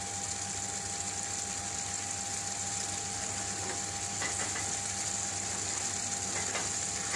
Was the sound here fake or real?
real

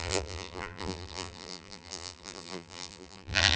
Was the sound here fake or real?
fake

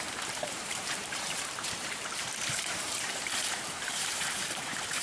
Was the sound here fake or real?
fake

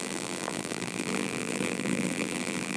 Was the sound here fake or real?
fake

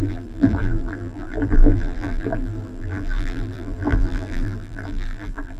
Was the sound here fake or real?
fake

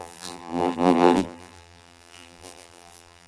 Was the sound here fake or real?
fake